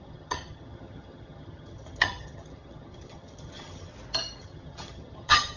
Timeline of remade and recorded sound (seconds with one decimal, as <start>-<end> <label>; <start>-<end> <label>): 0.0-3.9 remade; 3.9-4.4 recorded; 4.4-5.6 remade